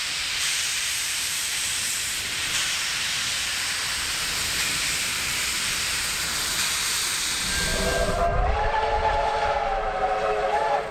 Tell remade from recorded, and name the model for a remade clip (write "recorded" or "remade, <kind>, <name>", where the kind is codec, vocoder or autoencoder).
remade, vocoder, BigVGAN v2